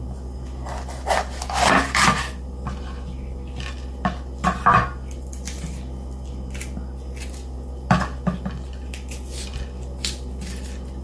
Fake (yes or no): no